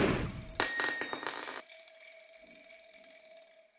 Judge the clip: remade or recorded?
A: recorded